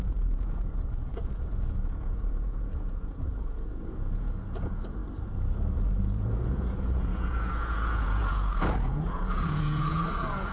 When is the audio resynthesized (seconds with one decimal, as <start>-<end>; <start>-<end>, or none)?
0.0-5.0; 6.0-10.5